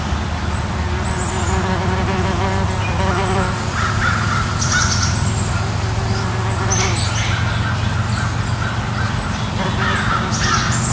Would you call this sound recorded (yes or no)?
yes